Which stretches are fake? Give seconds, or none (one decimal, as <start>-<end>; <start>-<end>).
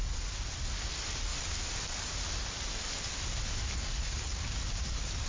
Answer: none